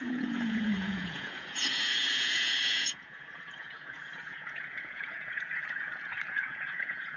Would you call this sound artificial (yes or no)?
yes